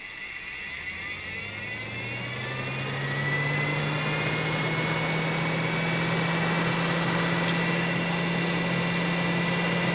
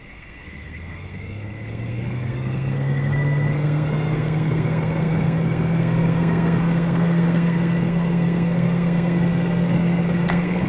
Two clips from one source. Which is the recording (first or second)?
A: first